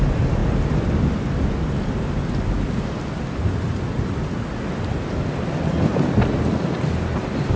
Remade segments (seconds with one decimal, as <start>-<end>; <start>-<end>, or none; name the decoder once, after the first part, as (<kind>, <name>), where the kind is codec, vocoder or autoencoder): none